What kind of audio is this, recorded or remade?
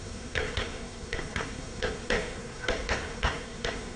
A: remade